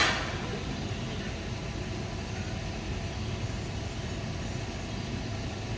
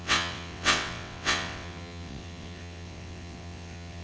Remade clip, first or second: second